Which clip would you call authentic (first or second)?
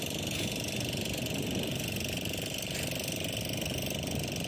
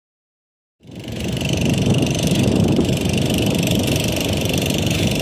first